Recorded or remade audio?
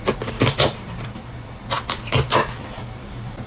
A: remade